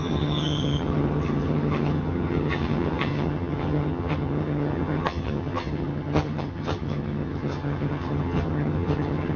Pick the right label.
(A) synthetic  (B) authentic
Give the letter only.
A